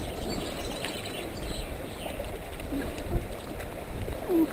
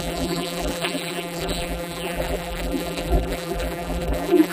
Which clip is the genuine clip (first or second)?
first